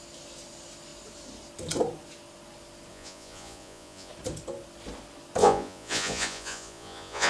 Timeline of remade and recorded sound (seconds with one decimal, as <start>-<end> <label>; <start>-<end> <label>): 0.0-2.9 recorded; 2.9-4.1 remade; 4.1-5.4 recorded; 5.4-7.3 remade